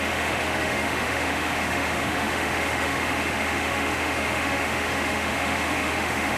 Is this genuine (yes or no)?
no